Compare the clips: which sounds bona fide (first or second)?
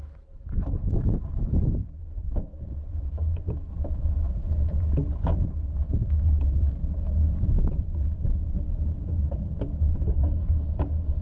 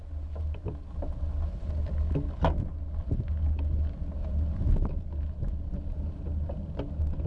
second